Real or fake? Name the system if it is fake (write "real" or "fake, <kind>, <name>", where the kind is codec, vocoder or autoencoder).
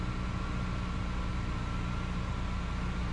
real